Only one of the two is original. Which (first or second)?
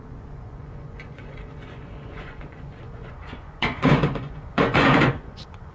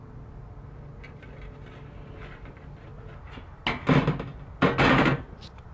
second